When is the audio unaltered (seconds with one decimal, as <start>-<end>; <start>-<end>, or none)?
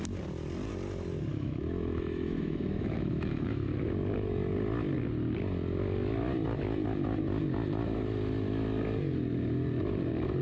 0.0-1.3; 3.7-10.4